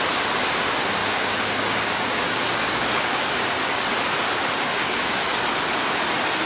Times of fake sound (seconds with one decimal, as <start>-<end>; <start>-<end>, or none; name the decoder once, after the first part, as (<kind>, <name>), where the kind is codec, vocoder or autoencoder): 1.0-3.9 (codec, DAC); 4.7-5.3